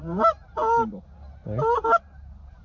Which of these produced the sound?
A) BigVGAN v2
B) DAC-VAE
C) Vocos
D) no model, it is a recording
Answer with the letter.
D